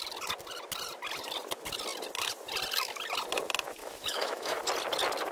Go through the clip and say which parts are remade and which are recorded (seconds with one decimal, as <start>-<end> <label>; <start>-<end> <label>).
0.0-3.8 recorded; 3.8-4.6 remade; 4.6-5.3 recorded